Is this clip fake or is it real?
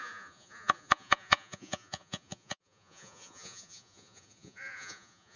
fake